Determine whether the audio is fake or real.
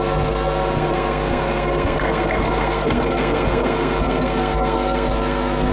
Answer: fake